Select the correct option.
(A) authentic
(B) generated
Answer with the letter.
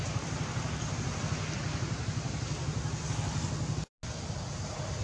A